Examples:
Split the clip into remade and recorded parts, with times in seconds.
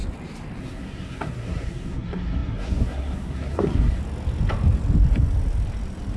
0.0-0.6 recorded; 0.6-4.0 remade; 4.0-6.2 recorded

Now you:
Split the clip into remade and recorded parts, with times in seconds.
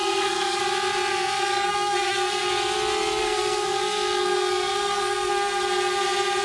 0.0-0.6 remade; 0.6-1.1 recorded; 1.1-2.5 remade; 2.5-3.2 recorded; 3.2-5.3 remade; 5.3-6.4 recorded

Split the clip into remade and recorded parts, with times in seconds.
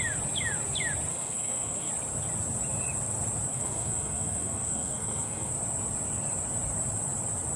0.0-1.1 recorded; 1.1-1.9 remade; 1.9-3.5 recorded; 3.5-5.5 remade; 5.5-7.6 recorded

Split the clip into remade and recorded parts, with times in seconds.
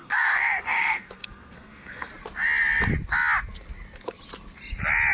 0.0-2.1 remade; 2.1-5.1 recorded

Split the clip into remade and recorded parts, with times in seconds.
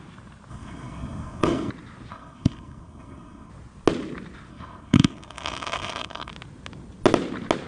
0.0-0.5 recorded; 0.5-1.7 remade; 1.7-2.1 recorded; 2.1-3.5 remade; 3.5-4.5 recorded; 4.5-6.3 remade; 6.3-7.7 recorded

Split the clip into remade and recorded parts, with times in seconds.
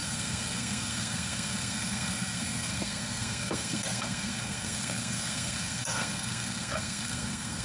0.0-7.6 remade